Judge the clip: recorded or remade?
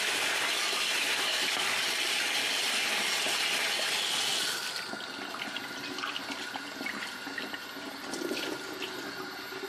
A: recorded